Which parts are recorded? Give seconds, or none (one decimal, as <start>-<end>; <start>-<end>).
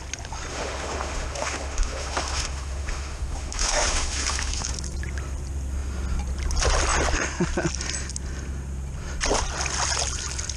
0.0-0.5; 4.7-10.6